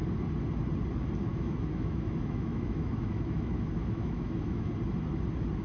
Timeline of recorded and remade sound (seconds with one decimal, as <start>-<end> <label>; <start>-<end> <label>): 0.0-1.3 recorded; 1.3-4.7 remade; 4.7-5.6 recorded